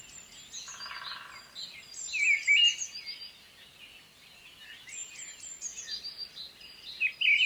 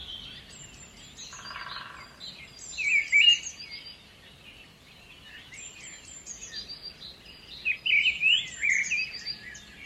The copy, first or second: second